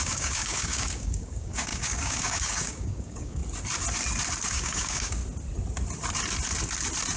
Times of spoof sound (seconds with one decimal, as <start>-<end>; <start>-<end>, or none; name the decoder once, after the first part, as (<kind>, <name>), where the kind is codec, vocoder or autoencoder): 0.0-3.4 (codec, DAC); 4.5-5.2